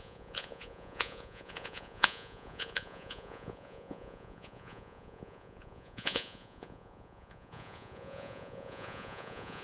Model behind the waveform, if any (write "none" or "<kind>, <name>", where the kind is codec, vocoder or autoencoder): vocoder, Vocos